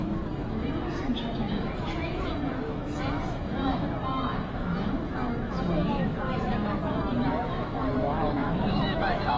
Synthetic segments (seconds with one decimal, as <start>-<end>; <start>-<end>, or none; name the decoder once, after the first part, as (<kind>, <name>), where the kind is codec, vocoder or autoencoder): 0.0-9.4 (autoencoder, DAC-VAE)